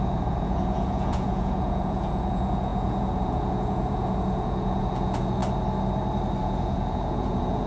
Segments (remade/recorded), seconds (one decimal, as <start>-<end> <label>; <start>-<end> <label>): 0.0-5.4 remade; 5.4-6.4 recorded; 6.4-7.7 remade